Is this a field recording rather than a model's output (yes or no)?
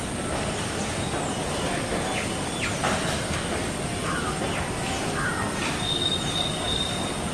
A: yes